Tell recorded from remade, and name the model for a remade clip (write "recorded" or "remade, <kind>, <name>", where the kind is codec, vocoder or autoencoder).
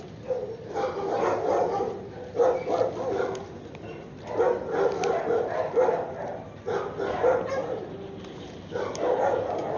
recorded